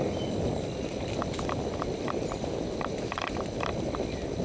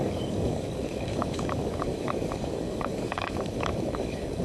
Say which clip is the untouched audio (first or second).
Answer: first